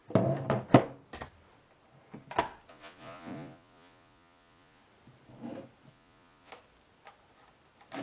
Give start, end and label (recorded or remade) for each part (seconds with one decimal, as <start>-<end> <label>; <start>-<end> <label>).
0.0-2.7 recorded; 2.7-4.8 remade; 4.8-5.9 recorded; 5.9-6.5 remade; 6.5-8.0 recorded